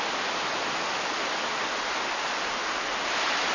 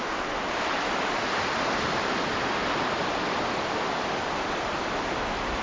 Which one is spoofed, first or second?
second